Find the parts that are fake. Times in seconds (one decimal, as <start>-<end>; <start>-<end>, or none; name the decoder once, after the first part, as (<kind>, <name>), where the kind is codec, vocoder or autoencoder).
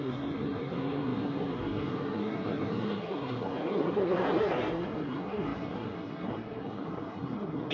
0.0-7.7 (codec, SNAC)